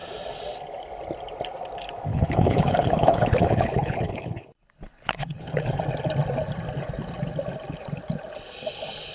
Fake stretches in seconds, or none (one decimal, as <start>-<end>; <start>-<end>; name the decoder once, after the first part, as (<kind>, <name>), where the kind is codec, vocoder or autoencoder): 2.1-5.8 (codec, HILCodec)